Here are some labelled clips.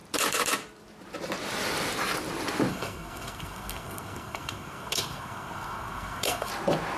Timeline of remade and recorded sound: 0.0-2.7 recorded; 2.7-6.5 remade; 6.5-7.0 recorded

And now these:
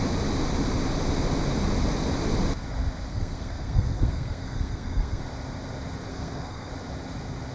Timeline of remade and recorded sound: 0.0-3.1 recorded; 3.1-5.2 remade; 5.2-6.1 recorded; 6.1-6.7 remade; 6.7-7.5 recorded

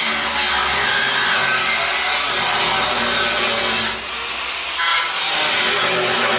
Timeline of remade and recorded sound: 0.0-6.4 recorded

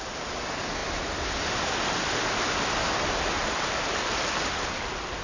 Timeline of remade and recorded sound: 0.0-5.2 recorded

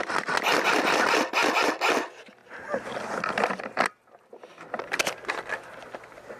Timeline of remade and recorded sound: 0.0-6.4 recorded